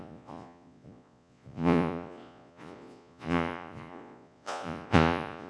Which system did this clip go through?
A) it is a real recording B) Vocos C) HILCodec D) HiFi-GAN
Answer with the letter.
B